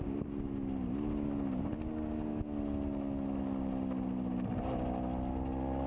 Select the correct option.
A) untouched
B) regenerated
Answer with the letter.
A